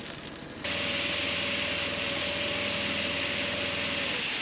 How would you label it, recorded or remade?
recorded